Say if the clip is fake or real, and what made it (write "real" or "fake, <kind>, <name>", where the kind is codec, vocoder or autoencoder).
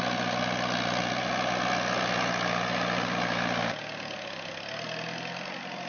real